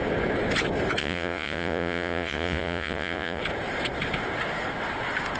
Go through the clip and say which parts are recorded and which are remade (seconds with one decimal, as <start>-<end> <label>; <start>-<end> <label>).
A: 0.0-1.0 recorded; 1.0-3.4 remade; 3.4-5.4 recorded